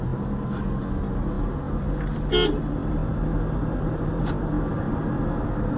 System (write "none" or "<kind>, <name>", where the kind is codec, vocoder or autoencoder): none